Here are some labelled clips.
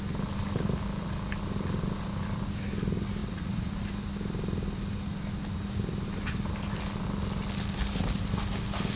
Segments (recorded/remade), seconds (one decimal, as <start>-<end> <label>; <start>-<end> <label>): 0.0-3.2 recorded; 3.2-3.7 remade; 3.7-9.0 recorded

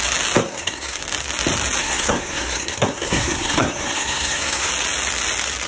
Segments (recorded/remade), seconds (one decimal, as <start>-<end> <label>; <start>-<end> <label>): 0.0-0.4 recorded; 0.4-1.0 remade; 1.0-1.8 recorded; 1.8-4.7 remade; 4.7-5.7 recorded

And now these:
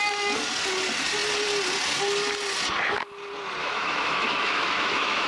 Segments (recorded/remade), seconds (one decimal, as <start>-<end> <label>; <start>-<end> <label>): 0.0-3.6 recorded; 3.6-5.3 remade

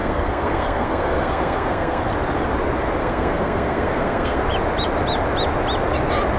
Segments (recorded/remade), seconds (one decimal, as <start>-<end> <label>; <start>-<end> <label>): 0.0-2.0 remade; 2.0-3.0 recorded; 3.0-4.4 remade; 4.4-6.4 recorded

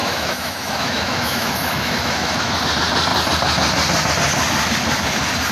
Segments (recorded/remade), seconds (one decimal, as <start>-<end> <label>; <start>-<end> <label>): 0.0-2.6 remade; 2.6-5.5 recorded